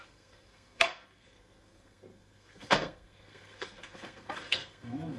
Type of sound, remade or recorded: remade